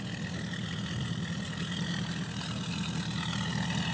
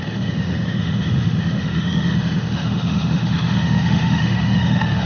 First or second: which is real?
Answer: first